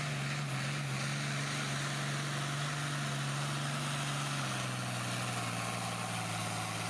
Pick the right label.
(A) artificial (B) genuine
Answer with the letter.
B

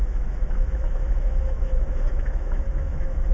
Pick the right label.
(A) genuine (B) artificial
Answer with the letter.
B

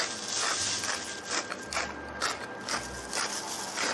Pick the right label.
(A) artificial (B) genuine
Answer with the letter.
B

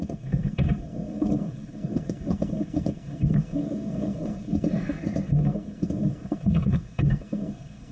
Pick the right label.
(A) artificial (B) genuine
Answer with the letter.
A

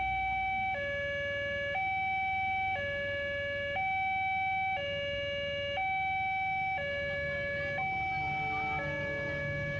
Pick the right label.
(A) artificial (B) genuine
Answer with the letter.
B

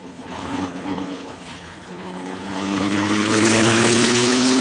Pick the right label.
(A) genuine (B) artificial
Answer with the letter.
B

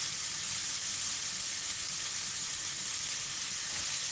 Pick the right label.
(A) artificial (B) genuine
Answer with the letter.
B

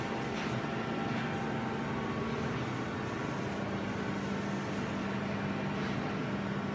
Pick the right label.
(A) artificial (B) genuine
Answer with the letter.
B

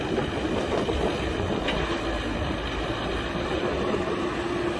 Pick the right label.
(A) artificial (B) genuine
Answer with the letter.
B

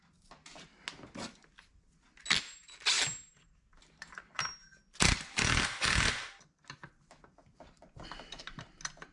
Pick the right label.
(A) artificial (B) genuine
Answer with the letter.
B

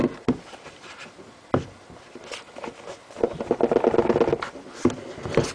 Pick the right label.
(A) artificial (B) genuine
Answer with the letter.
B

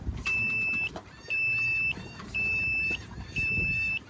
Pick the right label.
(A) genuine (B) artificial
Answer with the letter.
B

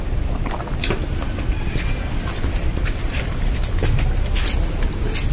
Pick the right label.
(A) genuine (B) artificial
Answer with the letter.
A